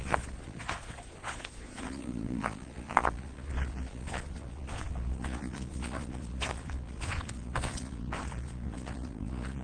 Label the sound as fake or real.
fake